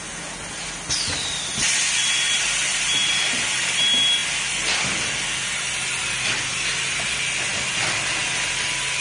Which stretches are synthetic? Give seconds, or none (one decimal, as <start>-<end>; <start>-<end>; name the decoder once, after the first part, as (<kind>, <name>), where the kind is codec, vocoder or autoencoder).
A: 2.0-3.6 (vocoder, BigVGAN v2)